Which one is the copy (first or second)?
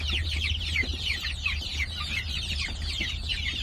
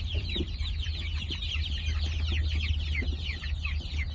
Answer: first